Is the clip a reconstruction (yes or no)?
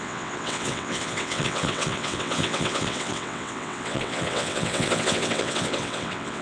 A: yes